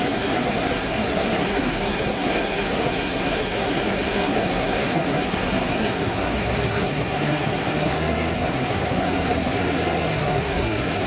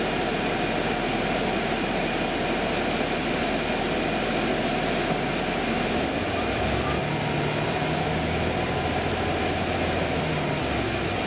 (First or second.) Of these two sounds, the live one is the second